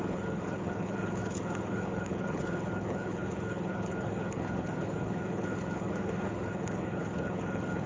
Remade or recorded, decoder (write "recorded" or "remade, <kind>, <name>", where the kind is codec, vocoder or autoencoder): remade, codec, HILCodec